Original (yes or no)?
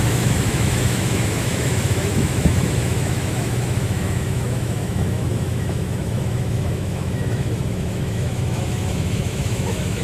no